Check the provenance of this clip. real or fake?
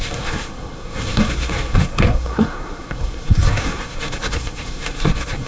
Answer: fake